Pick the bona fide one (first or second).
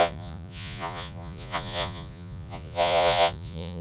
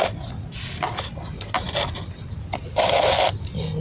second